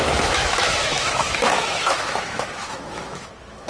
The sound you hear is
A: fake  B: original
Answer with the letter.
A